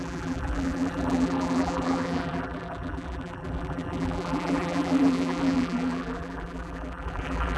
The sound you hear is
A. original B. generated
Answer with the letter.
B